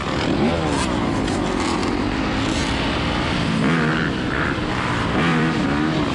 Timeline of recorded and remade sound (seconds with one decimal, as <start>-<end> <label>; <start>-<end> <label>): 0.0-5.3 recorded; 5.3-6.1 remade